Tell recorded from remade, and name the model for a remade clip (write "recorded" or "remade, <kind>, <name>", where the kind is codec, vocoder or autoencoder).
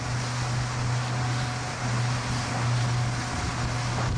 recorded